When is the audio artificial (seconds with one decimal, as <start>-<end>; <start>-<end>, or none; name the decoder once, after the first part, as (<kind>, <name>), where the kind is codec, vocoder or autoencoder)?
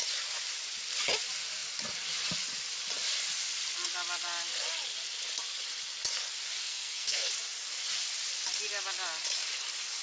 6.6-7.3 (codec, SNAC)